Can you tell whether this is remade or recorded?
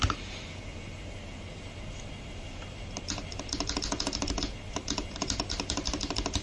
remade